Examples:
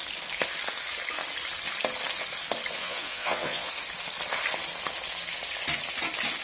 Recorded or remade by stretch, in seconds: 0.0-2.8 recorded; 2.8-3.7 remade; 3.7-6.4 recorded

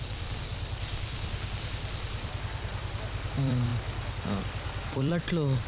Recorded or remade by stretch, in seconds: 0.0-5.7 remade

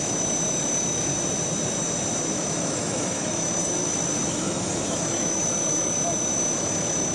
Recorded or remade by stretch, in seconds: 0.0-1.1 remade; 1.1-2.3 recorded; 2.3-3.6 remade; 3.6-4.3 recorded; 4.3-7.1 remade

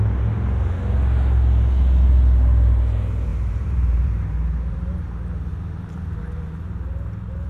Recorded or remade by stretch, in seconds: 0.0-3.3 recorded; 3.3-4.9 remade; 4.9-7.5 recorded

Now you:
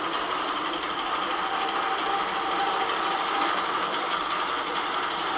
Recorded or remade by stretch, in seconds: 0.0-3.9 recorded; 3.9-4.4 remade; 4.4-5.4 recorded

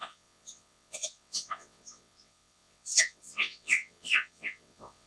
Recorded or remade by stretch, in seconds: 0.0-5.1 remade

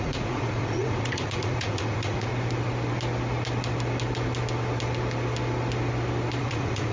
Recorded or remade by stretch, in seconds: 0.0-2.3 remade; 2.3-6.4 recorded; 6.4-6.9 remade